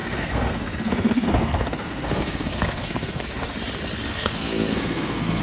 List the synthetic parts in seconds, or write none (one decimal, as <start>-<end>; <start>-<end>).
0.0-3.2; 4.1-5.4